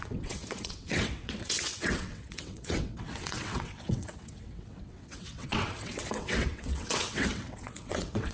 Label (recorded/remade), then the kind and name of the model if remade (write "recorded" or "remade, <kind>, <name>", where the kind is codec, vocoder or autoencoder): remade, vocoder, WaveNeXt